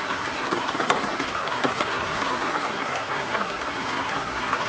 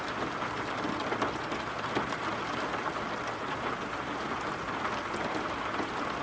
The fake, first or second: first